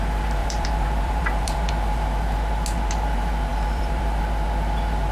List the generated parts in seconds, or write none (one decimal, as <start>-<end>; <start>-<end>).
0.4-1.7; 3.5-4.2